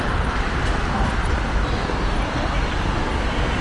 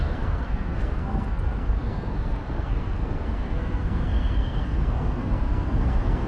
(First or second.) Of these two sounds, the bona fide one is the first